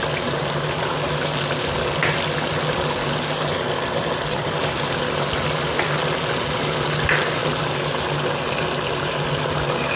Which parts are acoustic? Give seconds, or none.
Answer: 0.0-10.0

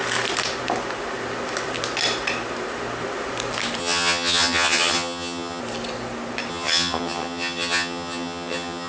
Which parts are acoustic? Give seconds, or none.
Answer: 0.0-3.8; 5.6-6.5

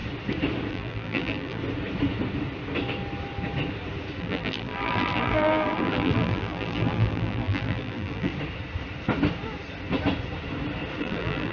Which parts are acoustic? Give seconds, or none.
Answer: 0.0-0.7; 1.6-4.2; 8.3-11.0

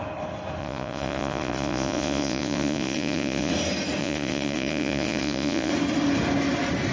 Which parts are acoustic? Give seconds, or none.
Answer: 0.0-0.6; 3.5-4.0; 5.7-6.9

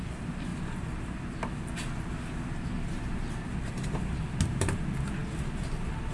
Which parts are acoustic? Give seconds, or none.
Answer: 0.0-6.1